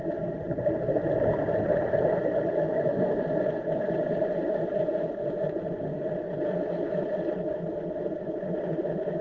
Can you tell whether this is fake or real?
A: real